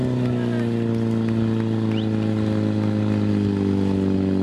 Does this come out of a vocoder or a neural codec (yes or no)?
no